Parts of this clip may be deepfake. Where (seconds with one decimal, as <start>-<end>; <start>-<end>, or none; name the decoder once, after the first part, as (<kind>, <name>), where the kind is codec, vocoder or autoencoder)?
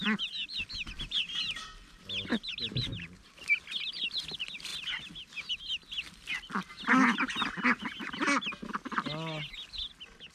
1.1-1.6 (vocoder, BigVGAN v2); 2.3-3.3